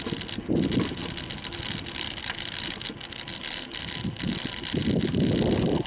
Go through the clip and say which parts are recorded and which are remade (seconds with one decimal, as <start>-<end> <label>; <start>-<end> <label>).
0.0-3.3 recorded; 3.3-3.8 remade; 3.8-5.9 recorded